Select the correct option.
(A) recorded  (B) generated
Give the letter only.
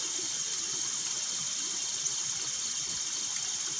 A